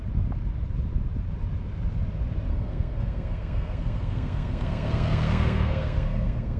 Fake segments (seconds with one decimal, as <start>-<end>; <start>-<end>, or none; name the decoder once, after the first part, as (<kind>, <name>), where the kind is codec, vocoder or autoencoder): 2.5-6.6 (codec, SNAC)